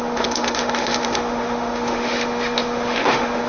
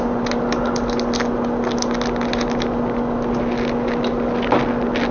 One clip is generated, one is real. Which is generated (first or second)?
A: first